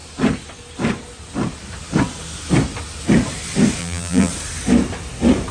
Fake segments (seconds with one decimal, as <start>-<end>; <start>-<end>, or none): 3.8-4.3